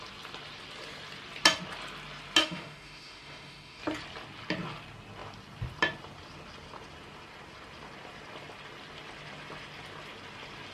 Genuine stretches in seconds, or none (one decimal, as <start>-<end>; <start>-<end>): 0.0-2.4; 3.8-10.7